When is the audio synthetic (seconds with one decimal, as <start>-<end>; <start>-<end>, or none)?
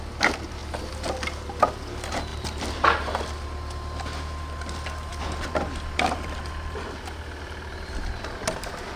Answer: 2.3-3.1